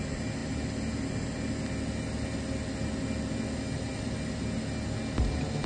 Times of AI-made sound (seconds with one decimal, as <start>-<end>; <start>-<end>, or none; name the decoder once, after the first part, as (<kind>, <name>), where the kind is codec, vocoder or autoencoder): none